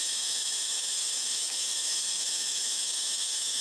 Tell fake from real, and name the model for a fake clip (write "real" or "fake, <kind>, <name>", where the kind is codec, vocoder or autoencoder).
fake, autoencoder, DAC-VAE